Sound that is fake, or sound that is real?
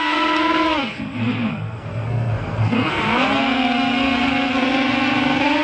fake